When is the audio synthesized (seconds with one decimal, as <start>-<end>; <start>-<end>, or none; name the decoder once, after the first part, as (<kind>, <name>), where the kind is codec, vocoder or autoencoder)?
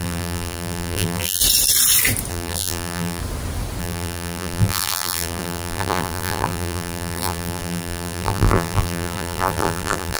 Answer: 0.0-1.4 (vocoder, BigVGAN v2); 2.3-3.2; 3.8-10.2